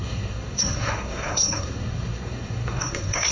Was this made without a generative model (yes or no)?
no